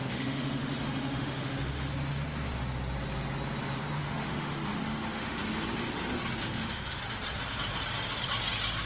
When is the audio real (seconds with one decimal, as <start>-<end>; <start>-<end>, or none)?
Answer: 1.9-4.0; 5.4-6.4; 7.0-8.9